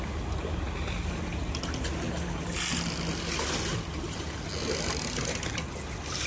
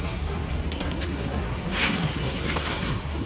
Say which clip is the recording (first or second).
first